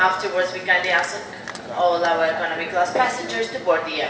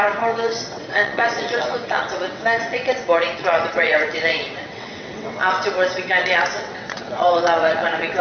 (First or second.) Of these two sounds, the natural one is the first